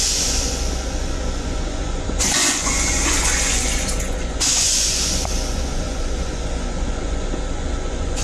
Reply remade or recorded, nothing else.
remade